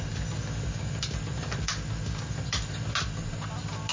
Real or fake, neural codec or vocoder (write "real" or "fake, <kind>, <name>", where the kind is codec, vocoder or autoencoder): real